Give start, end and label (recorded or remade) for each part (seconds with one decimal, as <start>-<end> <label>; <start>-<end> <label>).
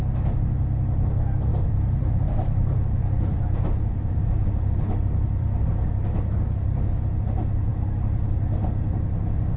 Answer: 0.0-1.5 recorded; 1.5-6.4 remade; 6.4-7.7 recorded; 7.7-8.7 remade; 8.7-9.6 recorded